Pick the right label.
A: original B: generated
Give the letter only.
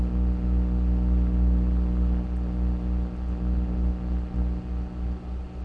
A